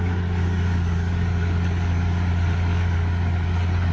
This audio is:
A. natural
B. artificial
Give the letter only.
B